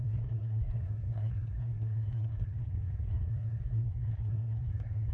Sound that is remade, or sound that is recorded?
remade